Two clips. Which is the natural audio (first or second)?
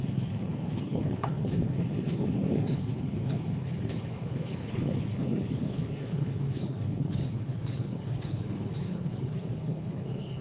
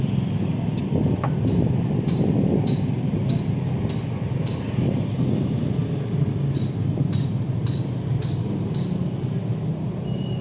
second